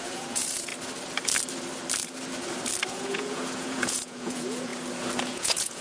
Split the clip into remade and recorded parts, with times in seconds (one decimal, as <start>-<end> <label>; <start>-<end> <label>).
0.0-0.7 remade; 0.7-2.9 recorded; 2.9-4.7 remade; 4.7-5.2 recorded; 5.2-5.8 remade

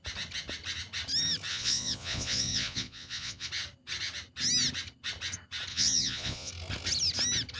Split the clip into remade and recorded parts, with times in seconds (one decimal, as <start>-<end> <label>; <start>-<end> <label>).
0.0-1.5 recorded; 1.5-3.5 remade; 3.5-5.7 recorded; 5.7-6.5 remade; 6.5-7.6 recorded

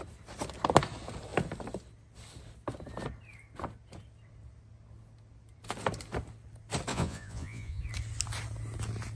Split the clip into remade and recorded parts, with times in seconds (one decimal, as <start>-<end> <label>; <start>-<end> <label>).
0.0-6.9 recorded; 6.9-7.8 remade; 7.8-9.2 recorded

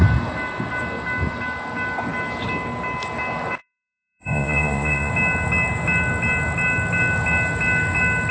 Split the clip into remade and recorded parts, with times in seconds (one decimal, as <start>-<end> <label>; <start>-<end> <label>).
0.0-3.6 recorded; 3.6-5.1 remade; 5.1-8.3 recorded

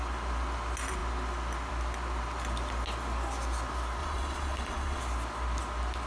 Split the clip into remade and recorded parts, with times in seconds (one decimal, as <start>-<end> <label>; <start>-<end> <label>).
0.0-4.0 recorded; 4.0-5.0 remade; 5.0-6.1 recorded

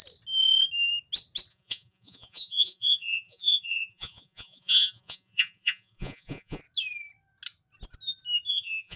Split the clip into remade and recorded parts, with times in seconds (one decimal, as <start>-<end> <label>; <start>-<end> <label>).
0.0-1.5 recorded; 1.5-6.6 remade; 6.6-8.5 recorded; 8.5-9.0 remade